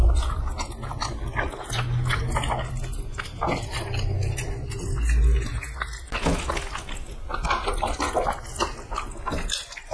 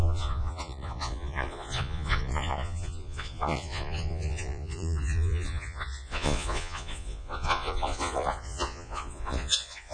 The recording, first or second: first